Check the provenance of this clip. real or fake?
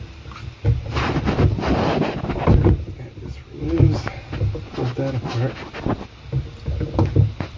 real